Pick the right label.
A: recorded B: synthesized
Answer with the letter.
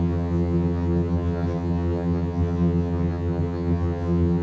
B